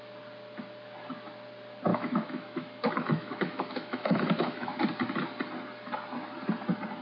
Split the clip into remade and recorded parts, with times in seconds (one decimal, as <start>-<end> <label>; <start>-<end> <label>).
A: 0.0-1.9 recorded; 1.9-4.8 remade; 4.8-7.0 recorded

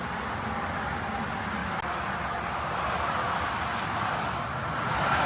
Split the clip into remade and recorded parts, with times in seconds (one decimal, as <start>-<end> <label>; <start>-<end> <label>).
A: 0.0-5.3 recorded

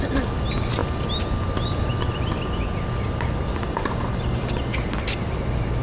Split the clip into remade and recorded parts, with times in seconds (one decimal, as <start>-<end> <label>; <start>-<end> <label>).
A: 0.0-5.8 recorded

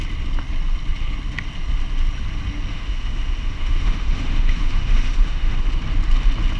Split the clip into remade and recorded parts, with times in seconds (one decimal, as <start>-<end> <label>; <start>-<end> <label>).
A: 0.0-2.7 recorded; 2.7-5.7 remade; 5.7-6.6 recorded

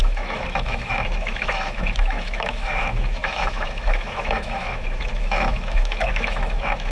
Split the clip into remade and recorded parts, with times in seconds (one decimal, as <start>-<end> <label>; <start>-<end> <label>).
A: 0.0-6.9 remade

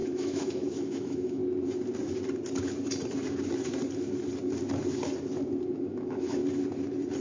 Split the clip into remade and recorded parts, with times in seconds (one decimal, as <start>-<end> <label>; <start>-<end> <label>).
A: 0.0-1.4 remade; 1.4-5.7 recorded; 5.7-6.4 remade; 6.4-7.2 recorded